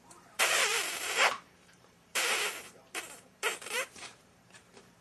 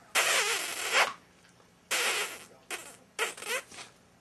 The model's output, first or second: first